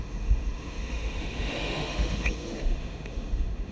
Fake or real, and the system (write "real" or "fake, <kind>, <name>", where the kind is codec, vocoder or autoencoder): fake, autoencoder, DAC-VAE